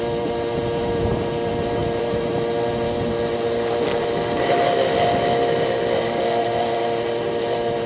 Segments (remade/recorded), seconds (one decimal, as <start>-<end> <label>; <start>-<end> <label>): 0.0-7.9 recorded